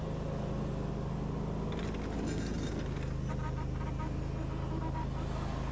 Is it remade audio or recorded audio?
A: recorded